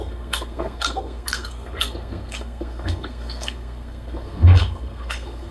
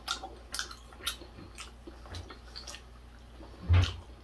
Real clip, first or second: second